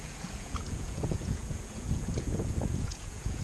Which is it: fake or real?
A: fake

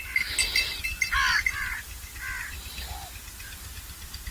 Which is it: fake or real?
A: real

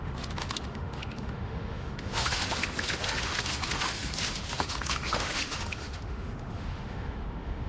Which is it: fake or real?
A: fake